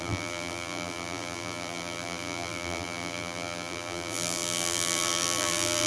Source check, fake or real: fake